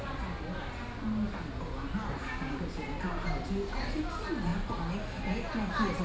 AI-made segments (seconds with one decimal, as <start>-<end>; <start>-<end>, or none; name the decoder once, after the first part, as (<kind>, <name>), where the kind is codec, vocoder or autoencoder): none